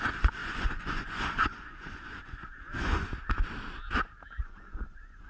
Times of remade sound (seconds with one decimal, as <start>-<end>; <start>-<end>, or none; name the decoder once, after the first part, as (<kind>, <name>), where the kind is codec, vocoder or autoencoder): 0.0-3.1 (vocoder, Vocos); 4.4-5.3